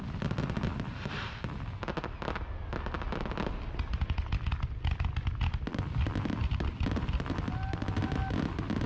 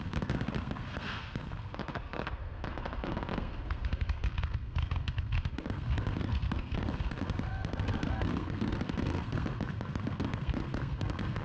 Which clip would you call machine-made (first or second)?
second